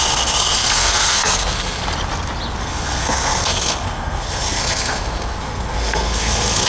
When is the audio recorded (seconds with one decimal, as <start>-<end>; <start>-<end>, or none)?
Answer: 1.8-2.6